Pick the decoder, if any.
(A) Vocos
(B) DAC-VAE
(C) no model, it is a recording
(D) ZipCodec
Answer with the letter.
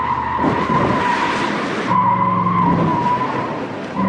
C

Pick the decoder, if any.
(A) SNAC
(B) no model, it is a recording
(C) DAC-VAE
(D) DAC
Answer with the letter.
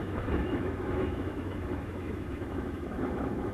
C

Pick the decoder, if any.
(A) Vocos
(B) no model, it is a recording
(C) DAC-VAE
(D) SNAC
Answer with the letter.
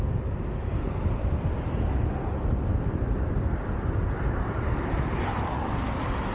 B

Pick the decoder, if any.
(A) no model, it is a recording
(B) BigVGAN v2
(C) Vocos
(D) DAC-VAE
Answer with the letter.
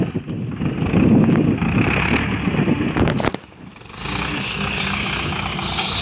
A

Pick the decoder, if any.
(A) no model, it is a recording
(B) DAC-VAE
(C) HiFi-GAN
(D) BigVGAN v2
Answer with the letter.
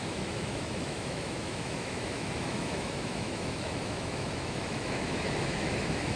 B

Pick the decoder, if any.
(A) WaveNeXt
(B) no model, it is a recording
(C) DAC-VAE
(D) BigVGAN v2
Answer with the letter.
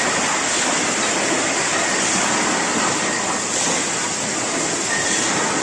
B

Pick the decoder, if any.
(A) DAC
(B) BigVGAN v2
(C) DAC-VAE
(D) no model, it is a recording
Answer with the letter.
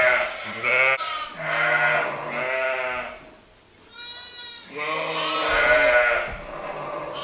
D